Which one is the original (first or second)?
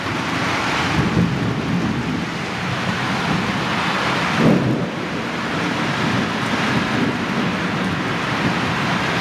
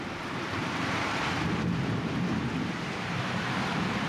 first